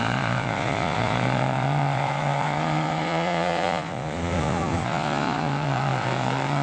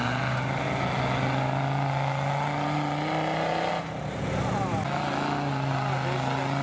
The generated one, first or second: first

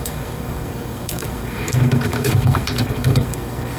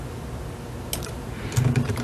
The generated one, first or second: first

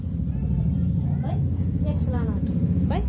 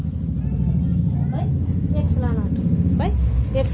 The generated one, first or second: first